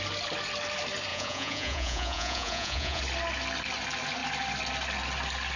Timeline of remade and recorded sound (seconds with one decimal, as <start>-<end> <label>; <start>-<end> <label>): 0.0-1.1 recorded; 1.1-3.0 remade; 3.0-5.6 recorded